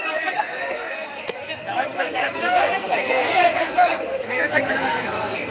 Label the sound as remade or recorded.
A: remade